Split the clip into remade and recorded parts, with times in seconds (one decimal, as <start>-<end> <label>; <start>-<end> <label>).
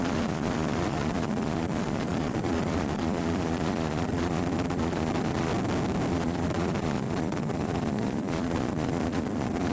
0.0-5.5 remade; 5.5-6.1 recorded; 6.1-9.7 remade